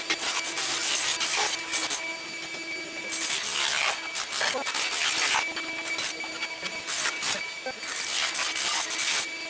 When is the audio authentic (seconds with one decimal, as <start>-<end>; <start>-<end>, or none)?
0.0-9.5